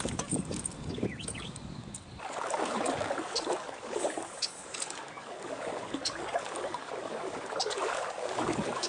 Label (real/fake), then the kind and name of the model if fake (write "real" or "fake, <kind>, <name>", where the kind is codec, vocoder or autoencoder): fake, codec, DAC